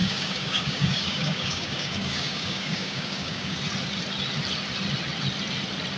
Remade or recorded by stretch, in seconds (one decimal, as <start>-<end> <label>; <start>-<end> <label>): 0.0-3.6 remade; 3.6-6.0 recorded